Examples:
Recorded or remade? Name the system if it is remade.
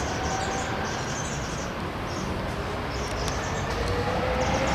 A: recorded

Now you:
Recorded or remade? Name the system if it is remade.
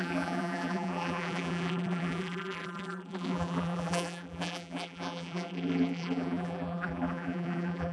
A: remade, vocoder, BigVGAN v2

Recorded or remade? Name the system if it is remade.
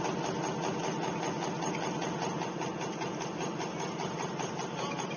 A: recorded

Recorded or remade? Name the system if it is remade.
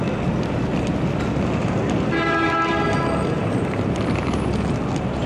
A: recorded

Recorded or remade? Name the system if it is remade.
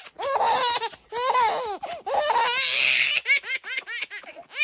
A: recorded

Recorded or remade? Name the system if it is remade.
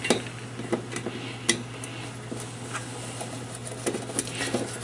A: recorded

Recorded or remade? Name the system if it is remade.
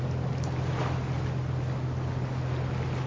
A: recorded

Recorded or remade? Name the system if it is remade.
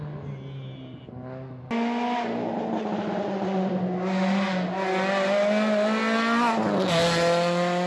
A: recorded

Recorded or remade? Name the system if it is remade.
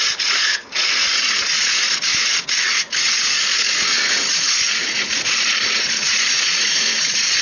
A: remade, vocoder, Vocos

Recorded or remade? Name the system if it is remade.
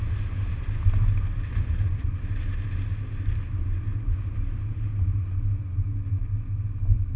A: recorded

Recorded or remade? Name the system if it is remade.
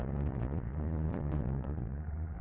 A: remade, vocoder, Vocos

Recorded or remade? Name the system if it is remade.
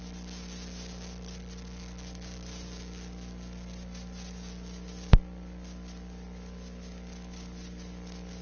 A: recorded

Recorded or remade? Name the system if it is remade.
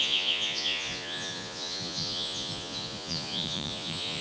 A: remade, vocoder, Vocos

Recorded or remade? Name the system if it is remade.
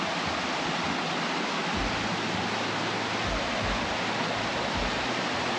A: recorded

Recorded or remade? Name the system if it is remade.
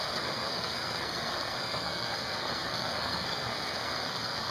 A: remade, codec, SNAC